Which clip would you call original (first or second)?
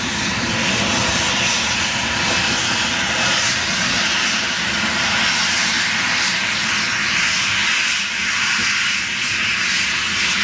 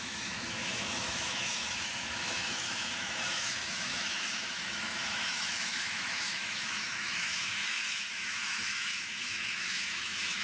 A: first